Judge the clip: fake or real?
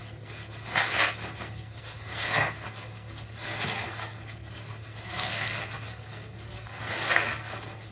fake